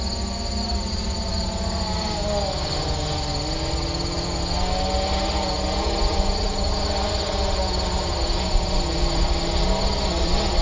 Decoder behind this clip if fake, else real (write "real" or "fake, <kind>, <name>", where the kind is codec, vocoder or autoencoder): real